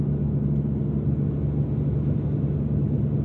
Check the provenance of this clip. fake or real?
real